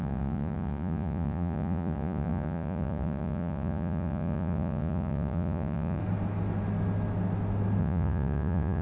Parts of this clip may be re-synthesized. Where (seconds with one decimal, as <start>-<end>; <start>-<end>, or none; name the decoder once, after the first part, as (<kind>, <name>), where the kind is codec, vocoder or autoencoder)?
0.0-6.0 (vocoder, Vocos); 7.8-8.8